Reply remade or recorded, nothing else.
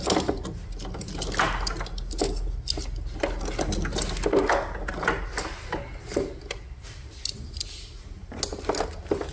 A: recorded